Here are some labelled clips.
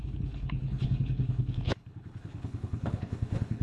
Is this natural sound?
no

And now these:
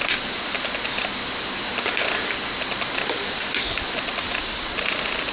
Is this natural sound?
yes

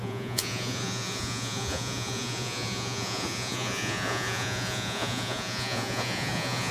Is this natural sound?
no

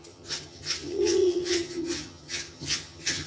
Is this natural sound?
no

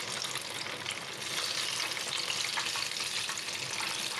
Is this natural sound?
yes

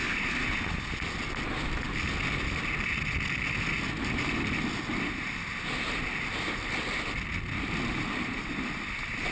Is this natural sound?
yes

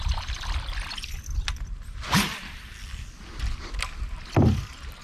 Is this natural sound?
yes